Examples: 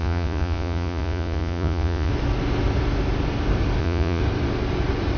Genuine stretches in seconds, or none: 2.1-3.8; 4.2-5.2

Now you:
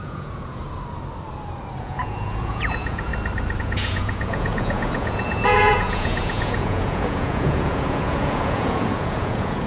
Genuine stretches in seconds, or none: 0.6-1.8; 3.1-3.6

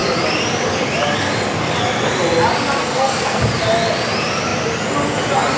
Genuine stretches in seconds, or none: 0.0-2.8; 3.4-5.6

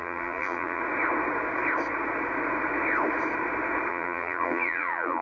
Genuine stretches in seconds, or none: 0.8-3.9

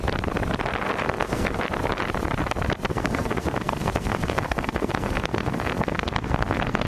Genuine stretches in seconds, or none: 0.0-1.0; 1.6-2.9